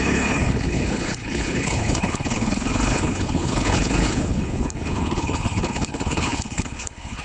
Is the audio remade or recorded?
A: remade